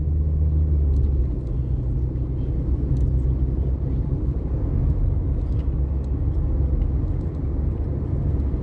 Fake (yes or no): no